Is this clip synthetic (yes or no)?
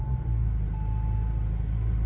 no